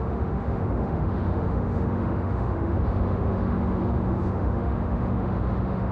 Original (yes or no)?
no